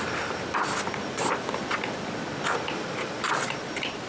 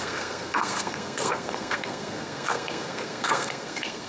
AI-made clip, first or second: second